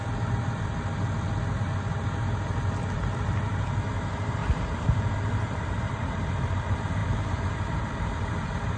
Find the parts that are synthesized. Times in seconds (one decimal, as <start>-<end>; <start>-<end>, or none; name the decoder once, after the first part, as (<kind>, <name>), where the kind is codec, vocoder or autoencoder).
4.4-6.2 (vocoder, BigVGAN v2); 7.0-8.3